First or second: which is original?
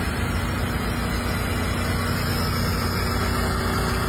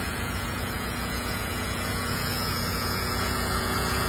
first